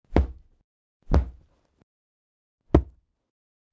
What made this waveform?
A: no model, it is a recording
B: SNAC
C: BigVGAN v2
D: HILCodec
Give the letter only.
A